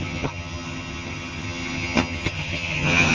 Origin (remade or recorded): remade